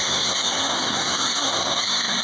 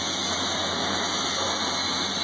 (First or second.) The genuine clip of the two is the second